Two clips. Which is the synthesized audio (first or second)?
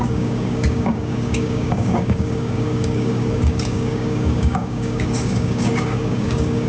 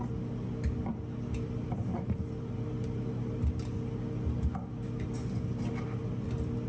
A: first